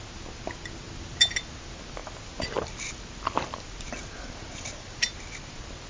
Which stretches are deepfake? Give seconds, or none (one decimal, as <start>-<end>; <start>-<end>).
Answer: none